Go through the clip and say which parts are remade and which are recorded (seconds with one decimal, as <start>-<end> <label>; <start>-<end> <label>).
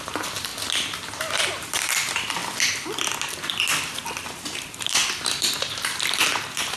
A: 0.0-0.5 remade; 0.5-1.2 recorded; 1.2-2.4 remade; 2.4-4.4 recorded; 4.4-6.8 remade